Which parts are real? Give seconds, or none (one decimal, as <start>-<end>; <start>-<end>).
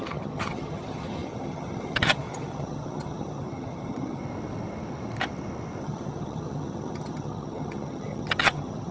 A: 4.2-5.8